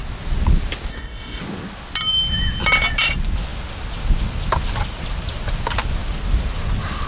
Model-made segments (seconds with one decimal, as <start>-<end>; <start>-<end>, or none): 0.9-1.4